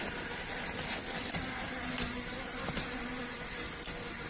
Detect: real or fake real